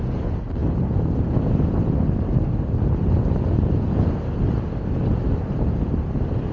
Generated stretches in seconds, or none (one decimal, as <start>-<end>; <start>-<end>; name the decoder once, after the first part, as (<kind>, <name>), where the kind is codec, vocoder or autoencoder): none